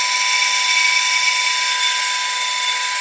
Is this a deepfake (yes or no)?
no